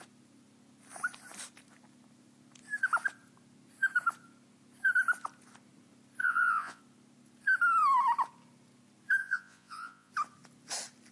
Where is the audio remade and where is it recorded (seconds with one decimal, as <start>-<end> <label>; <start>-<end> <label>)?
0.0-6.2 recorded; 6.2-6.8 remade; 6.8-9.2 recorded; 9.2-10.1 remade; 10.1-11.1 recorded